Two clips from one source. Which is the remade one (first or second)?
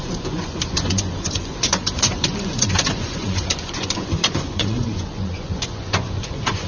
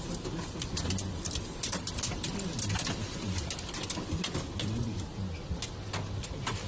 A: first